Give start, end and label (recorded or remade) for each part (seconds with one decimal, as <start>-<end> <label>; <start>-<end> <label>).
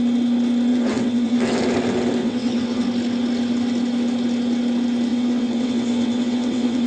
0.0-0.7 recorded; 0.7-1.6 remade; 1.6-2.2 recorded; 2.2-2.8 remade; 2.8-5.1 recorded; 5.1-6.9 remade